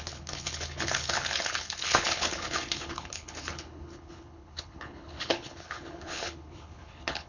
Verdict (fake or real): fake